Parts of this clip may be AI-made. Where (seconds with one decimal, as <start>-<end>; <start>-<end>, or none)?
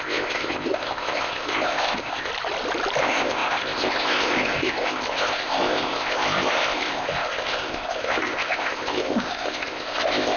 0.0-2.3; 3.0-10.4